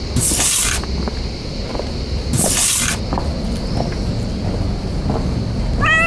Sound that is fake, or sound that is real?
real